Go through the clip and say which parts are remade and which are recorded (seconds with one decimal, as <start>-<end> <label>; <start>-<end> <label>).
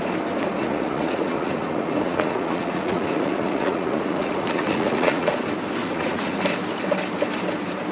0.0-0.6 recorded; 0.6-5.3 remade; 5.3-5.8 recorded; 5.8-6.4 remade; 6.4-7.9 recorded